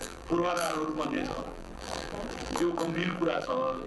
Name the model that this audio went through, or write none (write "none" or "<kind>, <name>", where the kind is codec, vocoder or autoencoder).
vocoder, BigVGAN v2